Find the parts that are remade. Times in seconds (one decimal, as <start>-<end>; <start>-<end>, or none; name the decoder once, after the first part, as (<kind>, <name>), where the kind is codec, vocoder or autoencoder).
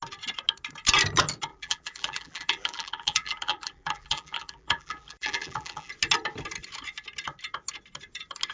1.5-5.9 (vocoder, BigVGAN v2)